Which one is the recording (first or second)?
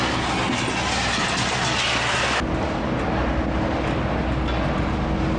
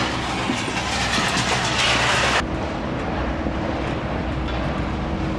first